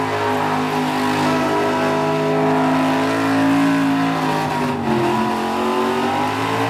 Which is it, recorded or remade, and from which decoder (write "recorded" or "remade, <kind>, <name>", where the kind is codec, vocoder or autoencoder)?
recorded